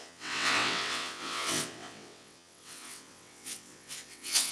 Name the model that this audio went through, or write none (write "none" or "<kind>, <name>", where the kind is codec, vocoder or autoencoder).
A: vocoder, WaveNeXt